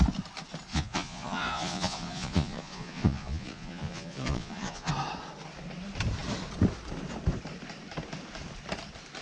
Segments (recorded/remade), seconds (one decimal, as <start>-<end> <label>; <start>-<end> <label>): 0.0-0.7 recorded; 0.7-4.9 remade; 4.9-9.2 recorded